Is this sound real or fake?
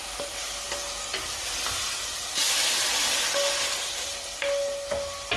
real